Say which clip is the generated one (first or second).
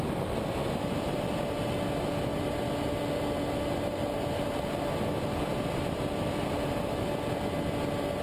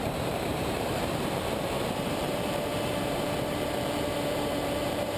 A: second